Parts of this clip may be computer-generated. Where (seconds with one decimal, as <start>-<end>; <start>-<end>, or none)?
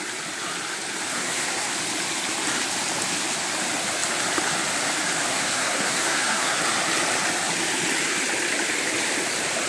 1.1-1.7; 5.3-6.6